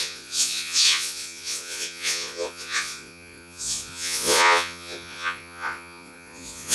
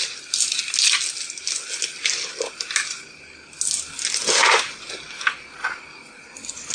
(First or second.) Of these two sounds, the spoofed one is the first